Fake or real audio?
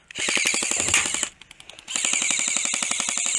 real